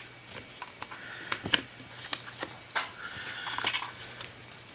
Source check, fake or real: real